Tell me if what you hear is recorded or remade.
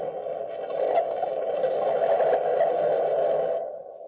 recorded